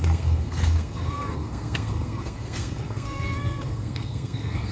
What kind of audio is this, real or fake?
fake